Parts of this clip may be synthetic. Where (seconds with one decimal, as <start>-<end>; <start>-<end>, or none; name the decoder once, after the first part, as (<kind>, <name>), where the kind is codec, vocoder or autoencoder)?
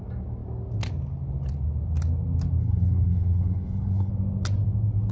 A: 2.6-4.1 (codec, HILCodec)